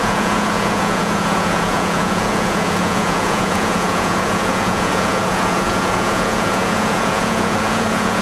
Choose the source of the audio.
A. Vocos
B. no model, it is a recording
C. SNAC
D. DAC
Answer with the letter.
A